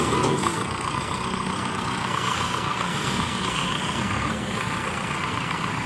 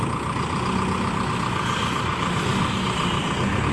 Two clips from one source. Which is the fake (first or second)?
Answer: first